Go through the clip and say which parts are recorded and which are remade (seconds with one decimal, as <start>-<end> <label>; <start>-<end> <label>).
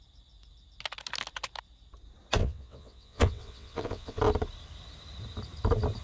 0.0-2.4 recorded; 2.4-4.2 remade; 4.2-6.0 recorded